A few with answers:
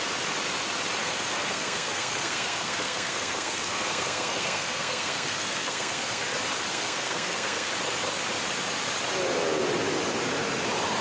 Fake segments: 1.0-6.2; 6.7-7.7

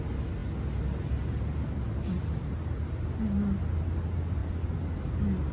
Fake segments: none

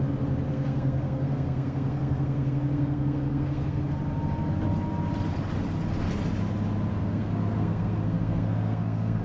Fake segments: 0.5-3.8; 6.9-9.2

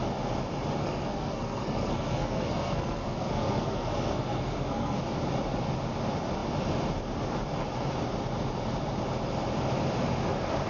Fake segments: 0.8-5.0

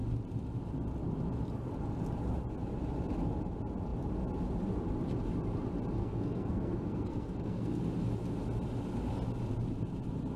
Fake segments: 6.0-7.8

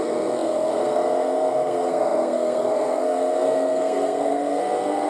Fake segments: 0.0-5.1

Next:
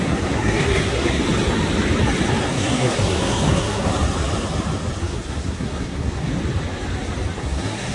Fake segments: 0.0-1.2; 2.5-3.9; 5.0-6.3; 7.4-7.9